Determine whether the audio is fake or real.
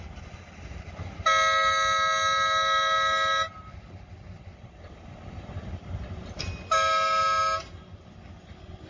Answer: real